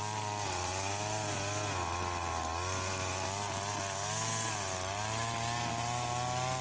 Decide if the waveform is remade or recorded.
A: recorded